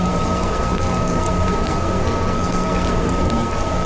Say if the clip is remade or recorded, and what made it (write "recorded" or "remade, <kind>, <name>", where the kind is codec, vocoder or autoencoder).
remade, codec, SNAC